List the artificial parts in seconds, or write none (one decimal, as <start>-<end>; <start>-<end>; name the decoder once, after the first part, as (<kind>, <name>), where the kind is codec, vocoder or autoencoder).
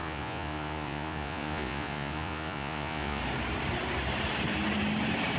0.0-3.2 (vocoder, Vocos)